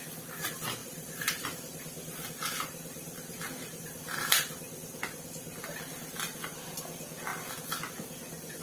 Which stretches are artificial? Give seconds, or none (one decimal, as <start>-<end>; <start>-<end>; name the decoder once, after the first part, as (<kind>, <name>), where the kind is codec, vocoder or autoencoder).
0.8-5.0 (vocoder, BigVGAN v2); 5.6-6.7